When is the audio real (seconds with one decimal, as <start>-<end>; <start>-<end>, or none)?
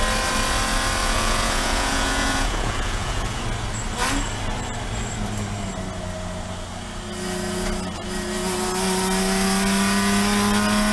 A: 0.0-1.0; 3.4-10.9